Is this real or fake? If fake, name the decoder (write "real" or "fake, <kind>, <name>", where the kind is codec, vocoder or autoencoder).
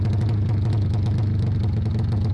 real